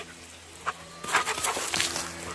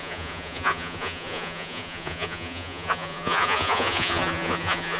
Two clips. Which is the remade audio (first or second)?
second